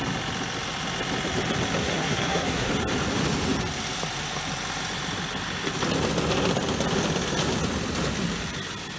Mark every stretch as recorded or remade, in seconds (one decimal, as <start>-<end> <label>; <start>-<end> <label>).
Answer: 0.0-1.8 recorded; 1.8-2.7 remade; 2.7-9.0 recorded